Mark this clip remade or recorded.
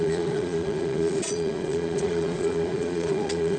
remade